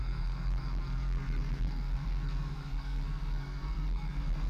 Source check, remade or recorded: remade